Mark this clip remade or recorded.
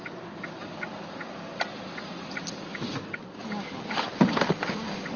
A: recorded